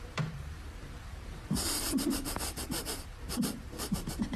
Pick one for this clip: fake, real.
fake